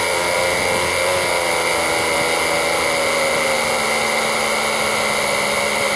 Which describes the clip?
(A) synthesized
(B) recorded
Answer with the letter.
B